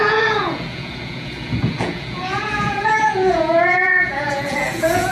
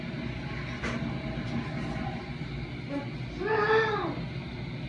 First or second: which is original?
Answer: second